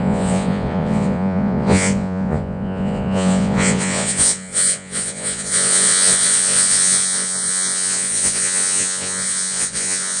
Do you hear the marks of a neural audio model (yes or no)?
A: yes